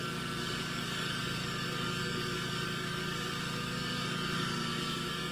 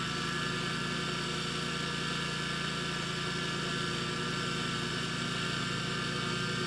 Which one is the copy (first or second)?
first